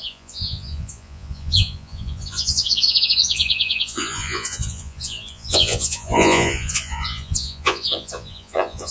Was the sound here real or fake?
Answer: fake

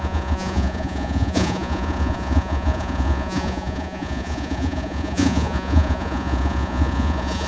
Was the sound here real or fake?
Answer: fake